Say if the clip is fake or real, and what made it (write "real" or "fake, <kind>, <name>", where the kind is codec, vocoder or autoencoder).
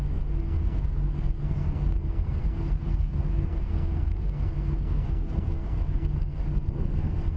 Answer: fake, codec, SNAC